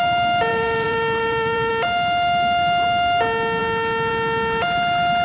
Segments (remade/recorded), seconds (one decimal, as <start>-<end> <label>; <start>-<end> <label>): 0.0-0.5 recorded; 0.5-1.7 remade; 1.7-5.2 recorded